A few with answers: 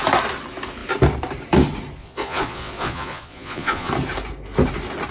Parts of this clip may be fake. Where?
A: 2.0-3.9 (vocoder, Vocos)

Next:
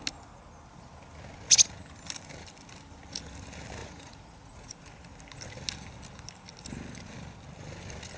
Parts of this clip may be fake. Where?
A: 3.8-4.9 (vocoder, Vocos)